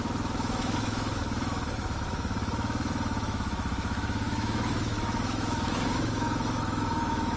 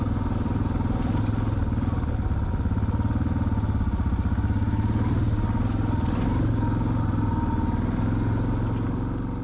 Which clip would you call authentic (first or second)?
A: second